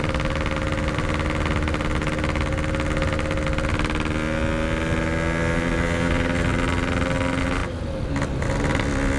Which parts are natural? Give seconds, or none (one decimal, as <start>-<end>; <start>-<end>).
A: 0.0-9.2